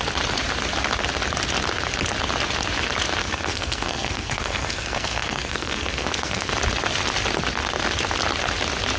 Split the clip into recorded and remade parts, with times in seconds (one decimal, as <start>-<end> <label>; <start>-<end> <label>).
0.0-3.2 recorded; 3.2-6.5 remade; 6.5-9.0 recorded